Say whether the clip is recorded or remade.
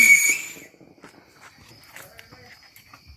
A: recorded